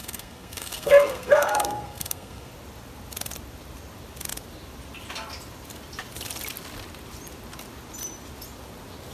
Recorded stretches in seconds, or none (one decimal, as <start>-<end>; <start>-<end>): 2.5-9.1